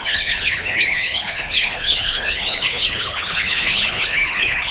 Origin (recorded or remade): remade